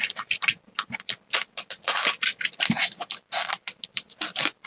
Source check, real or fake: real